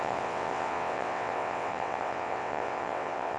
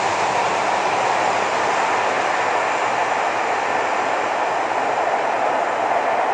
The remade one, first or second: first